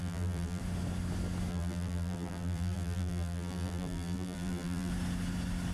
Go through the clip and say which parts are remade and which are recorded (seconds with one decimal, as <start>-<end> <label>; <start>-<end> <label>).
0.0-0.6 remade; 0.6-1.5 recorded; 1.5-4.9 remade; 4.9-5.7 recorded